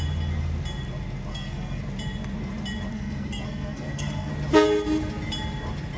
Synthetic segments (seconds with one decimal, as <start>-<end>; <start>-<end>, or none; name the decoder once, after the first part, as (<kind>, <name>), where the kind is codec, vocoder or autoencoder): 1.3-1.8 (codec, SNAC); 2.9-4.3